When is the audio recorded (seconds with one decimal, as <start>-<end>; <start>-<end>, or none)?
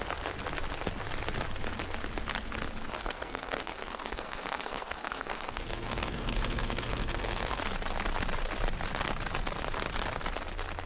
0.0-2.9; 7.6-10.9